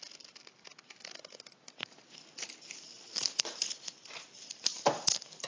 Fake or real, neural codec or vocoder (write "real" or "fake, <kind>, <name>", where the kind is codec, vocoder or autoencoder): real